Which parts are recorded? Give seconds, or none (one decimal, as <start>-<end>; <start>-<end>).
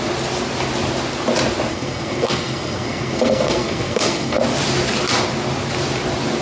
0.0-1.7; 4.4-6.4